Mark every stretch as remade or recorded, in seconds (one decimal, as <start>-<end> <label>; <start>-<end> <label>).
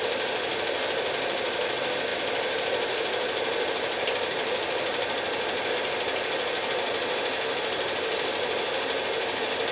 0.0-9.7 recorded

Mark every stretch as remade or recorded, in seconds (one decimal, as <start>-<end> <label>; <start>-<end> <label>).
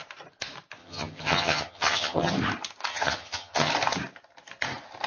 0.0-0.8 recorded; 0.8-2.3 remade; 2.3-2.9 recorded; 2.9-3.7 remade; 3.7-5.1 recorded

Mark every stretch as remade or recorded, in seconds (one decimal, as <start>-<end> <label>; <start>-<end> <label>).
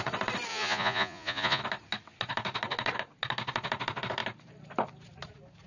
0.0-0.5 recorded; 0.5-1.6 remade; 1.6-5.7 recorded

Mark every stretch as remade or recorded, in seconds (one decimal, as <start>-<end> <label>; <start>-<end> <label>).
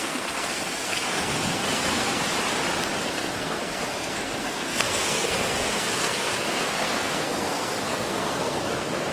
0.0-2.2 remade; 2.2-3.0 recorded; 3.0-9.1 remade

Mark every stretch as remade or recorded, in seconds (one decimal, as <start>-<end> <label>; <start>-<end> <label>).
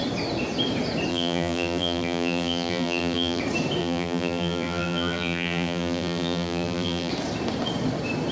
0.0-1.1 recorded; 1.1-3.4 remade; 3.4-3.8 recorded; 3.8-7.1 remade; 7.1-8.3 recorded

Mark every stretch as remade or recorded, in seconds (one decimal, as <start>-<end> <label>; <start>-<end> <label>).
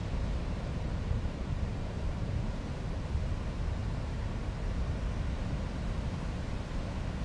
0.0-3.0 remade; 3.0-3.8 recorded; 3.8-5.1 remade; 5.1-7.2 recorded